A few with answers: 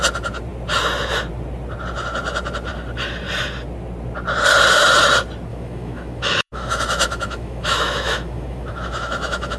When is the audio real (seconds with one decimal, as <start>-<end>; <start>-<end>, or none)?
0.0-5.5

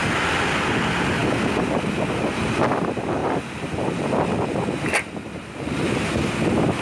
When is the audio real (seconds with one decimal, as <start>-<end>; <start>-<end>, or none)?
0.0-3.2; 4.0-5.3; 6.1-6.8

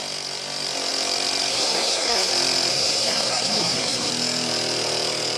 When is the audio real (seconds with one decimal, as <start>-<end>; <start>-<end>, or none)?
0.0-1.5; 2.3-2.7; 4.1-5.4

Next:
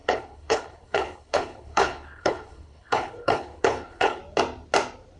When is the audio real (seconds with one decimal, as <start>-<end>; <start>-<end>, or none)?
4.2-5.2